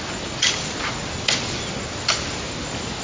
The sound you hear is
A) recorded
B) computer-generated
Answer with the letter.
A